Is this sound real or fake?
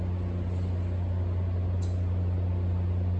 real